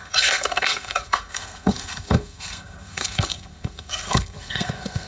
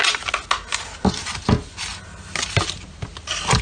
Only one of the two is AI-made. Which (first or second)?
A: first